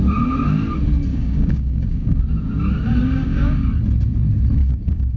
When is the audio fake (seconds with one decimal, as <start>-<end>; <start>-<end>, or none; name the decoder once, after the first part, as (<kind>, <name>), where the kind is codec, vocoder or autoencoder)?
1.1-2.2 (codec, DAC); 3.0-3.7; 4.6-5.2